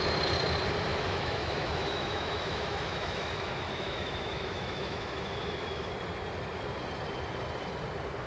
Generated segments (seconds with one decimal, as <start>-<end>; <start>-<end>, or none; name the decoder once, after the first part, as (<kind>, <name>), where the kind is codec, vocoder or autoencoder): 0.9-5.9 (autoencoder, DAC-VAE)